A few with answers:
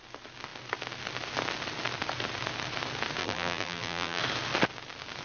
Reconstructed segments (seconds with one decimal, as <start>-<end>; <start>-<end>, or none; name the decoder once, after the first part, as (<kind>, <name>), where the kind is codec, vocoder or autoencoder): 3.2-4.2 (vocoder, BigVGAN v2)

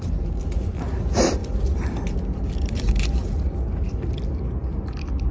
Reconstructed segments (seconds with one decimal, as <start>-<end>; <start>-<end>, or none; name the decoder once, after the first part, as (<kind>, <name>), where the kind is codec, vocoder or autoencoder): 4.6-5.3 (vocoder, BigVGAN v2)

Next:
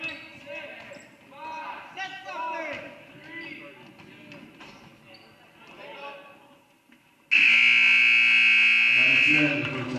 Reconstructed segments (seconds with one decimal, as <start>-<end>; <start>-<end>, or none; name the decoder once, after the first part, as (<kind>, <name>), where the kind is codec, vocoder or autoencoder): none